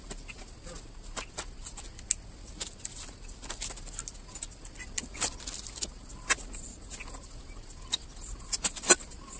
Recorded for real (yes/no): yes